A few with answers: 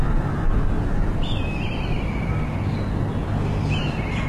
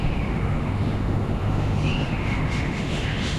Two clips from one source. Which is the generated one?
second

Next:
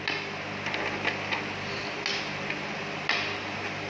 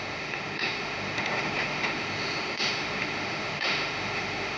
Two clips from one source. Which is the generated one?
second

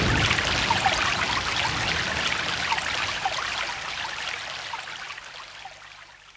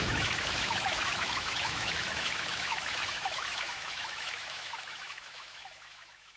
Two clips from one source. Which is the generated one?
second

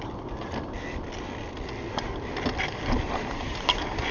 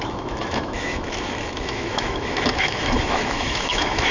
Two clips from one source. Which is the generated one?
second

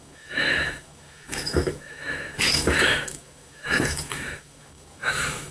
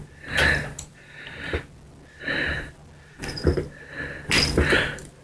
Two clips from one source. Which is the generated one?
first